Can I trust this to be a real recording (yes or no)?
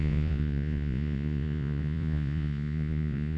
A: no